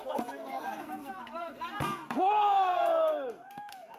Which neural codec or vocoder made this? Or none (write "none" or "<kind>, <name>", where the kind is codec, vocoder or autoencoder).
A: codec, SNAC